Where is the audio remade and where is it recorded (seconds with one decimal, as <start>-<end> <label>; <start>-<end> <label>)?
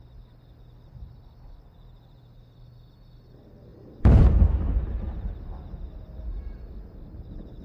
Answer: 0.0-3.7 recorded; 3.7-4.8 remade; 4.8-7.6 recorded